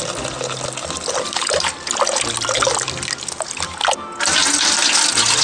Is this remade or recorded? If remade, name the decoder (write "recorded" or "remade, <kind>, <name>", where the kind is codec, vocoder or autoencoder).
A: recorded